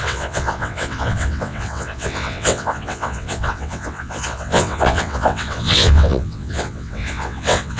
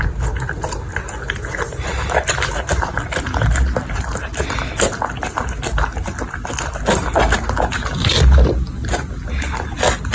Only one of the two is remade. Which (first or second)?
first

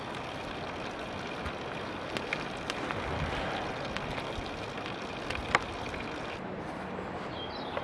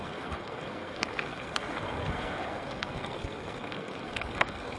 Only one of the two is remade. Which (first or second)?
second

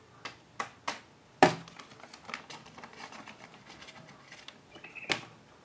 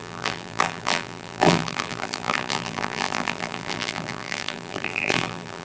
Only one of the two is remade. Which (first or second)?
second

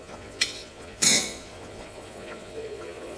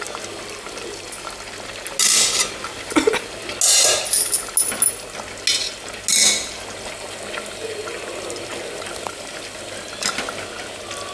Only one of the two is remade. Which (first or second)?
first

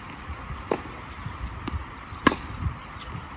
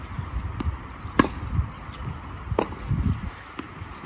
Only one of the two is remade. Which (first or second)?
first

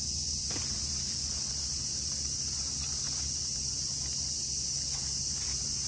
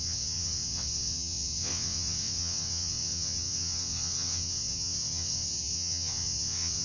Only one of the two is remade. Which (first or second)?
second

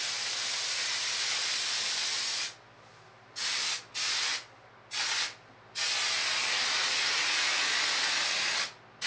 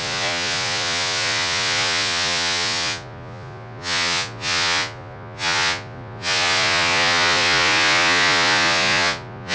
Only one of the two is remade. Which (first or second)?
second